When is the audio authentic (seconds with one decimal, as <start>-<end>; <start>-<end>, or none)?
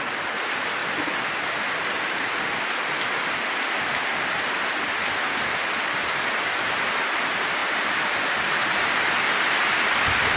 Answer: 0.0-10.4